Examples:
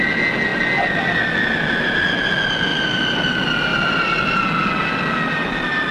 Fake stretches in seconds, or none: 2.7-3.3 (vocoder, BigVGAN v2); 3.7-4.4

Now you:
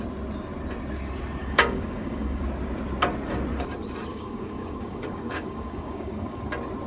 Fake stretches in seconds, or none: 1.4-2.4 (codec, DAC); 4.1-6.4